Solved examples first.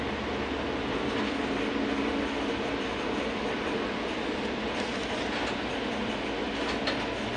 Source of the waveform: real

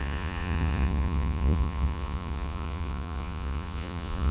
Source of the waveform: fake